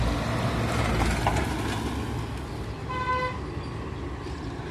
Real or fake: real